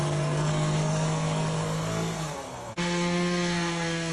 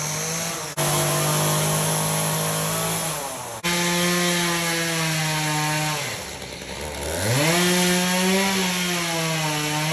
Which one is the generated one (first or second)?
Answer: first